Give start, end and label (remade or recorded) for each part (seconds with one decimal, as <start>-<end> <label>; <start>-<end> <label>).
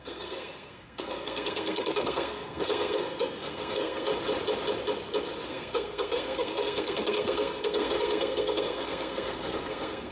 0.0-4.1 remade; 4.1-5.5 recorded; 5.5-10.1 remade